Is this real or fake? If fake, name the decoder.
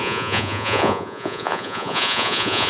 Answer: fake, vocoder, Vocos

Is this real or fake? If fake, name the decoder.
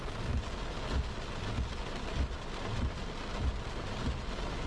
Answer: real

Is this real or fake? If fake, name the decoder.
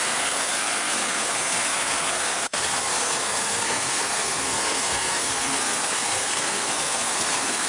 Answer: fake, codec, SNAC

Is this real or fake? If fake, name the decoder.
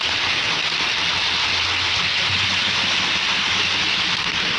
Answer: fake, vocoder, BigVGAN v2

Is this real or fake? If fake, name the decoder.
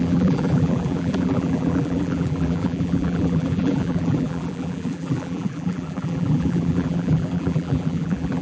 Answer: fake, vocoder, BigVGAN v2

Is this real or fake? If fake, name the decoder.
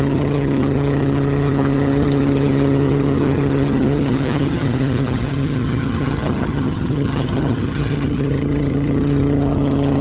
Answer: fake, vocoder, HiFi-GAN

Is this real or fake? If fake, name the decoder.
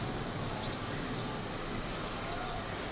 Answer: real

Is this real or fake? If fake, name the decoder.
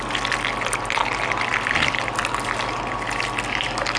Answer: real